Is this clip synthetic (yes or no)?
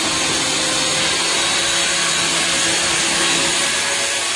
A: no